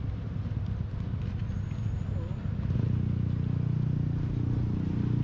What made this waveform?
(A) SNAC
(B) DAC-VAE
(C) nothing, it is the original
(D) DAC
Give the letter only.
C